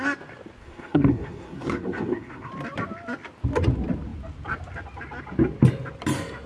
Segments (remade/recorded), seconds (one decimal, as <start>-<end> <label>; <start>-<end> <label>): 0.0-0.6 recorded; 0.6-2.5 remade; 2.5-6.5 recorded